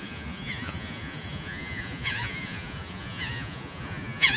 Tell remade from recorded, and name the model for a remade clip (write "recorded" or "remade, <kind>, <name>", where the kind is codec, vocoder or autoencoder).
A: remade, vocoder, Vocos